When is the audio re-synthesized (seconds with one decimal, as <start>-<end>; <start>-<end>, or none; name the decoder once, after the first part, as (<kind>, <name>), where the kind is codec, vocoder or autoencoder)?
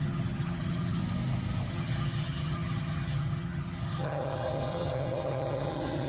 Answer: 0.0-1.0 (vocoder, HiFi-GAN); 1.7-6.1